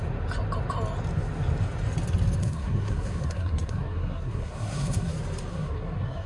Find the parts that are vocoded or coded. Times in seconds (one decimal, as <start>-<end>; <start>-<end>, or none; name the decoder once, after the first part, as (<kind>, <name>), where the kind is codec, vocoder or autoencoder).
2.4-5.1 (codec, SNAC); 5.5-6.3